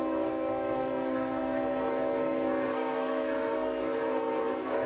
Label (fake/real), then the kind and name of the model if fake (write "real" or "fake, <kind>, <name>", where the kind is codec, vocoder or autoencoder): fake, codec, SNAC